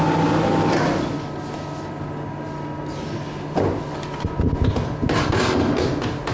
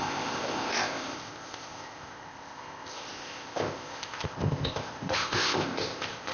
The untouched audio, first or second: first